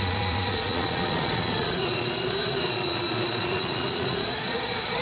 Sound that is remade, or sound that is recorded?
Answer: remade